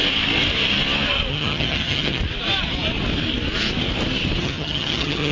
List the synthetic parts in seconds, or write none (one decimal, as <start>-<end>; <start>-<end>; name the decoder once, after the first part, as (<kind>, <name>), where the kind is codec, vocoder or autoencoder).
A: 1.3-2.2 (vocoder, HiFi-GAN); 4.4-5.3